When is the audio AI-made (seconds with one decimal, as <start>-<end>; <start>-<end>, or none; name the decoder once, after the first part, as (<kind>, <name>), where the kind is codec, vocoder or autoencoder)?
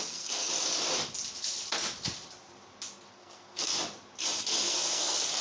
0.0-0.5 (codec, SNAC); 3.1-3.7; 4.4-5.4